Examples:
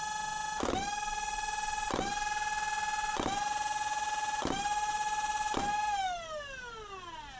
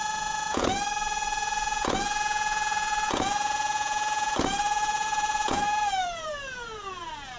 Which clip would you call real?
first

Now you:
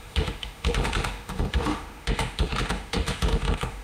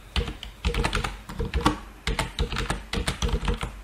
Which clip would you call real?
second